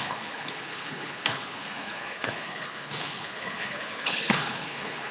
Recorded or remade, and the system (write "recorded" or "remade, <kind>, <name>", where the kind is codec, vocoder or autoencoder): remade, codec, HILCodec